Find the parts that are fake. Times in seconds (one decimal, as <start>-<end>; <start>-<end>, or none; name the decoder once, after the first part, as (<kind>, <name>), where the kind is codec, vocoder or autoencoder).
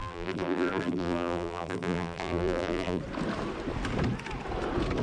0.0-3.0 (vocoder, BigVGAN v2)